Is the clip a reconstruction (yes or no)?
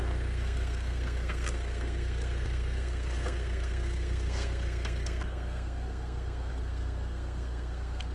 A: yes